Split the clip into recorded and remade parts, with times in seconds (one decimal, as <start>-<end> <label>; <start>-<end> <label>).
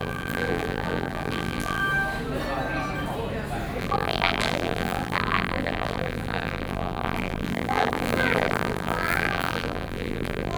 0.0-1.8 remade; 1.8-3.8 recorded; 3.8-10.6 remade